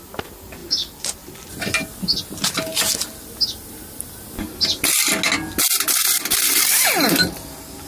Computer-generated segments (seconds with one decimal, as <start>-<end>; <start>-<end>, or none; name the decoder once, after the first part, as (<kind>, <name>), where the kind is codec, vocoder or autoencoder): none